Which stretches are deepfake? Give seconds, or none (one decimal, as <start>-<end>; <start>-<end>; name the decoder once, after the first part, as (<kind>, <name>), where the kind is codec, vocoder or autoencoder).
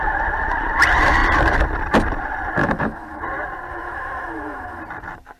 2.6-3.2 (autoencoder, DAC-VAE); 3.7-4.8